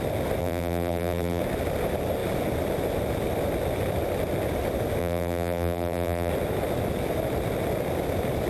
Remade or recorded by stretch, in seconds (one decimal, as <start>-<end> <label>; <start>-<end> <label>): 0.0-0.4 recorded; 0.4-1.4 remade; 1.4-5.0 recorded; 5.0-6.3 remade; 6.3-8.5 recorded

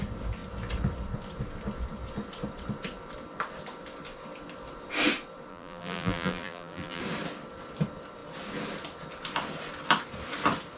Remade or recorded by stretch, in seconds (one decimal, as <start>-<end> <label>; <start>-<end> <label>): 0.0-5.5 recorded; 5.5-7.0 remade; 7.0-10.8 recorded